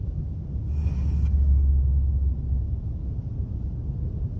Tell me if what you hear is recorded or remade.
recorded